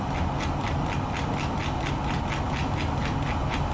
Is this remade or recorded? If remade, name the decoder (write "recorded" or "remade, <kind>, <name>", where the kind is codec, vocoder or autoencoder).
recorded